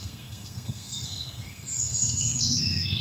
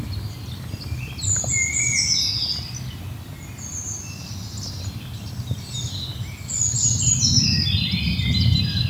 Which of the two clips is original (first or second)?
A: second